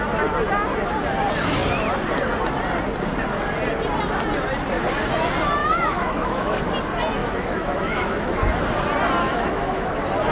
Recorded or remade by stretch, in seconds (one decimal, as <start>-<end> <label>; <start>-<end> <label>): 0.0-5.6 recorded; 5.6-6.6 remade; 6.6-7.2 recorded; 7.2-8.6 remade; 8.6-9.2 recorded; 9.2-9.9 remade; 9.9-10.3 recorded